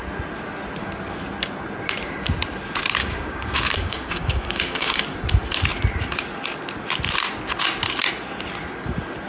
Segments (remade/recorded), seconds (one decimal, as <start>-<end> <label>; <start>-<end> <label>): 0.0-3.0 recorded; 3.0-5.0 remade; 5.0-9.3 recorded